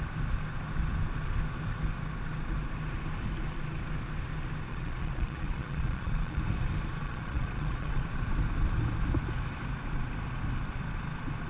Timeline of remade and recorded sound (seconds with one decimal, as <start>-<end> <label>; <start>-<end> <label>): 0.0-4.7 recorded; 4.7-6.4 remade; 6.4-7.0 recorded; 7.0-8.1 remade; 8.1-11.5 recorded